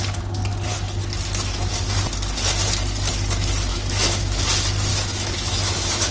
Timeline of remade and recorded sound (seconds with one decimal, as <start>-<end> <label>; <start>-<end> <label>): 0.0-3.7 recorded; 3.7-4.4 remade; 4.4-4.9 recorded; 4.9-6.1 remade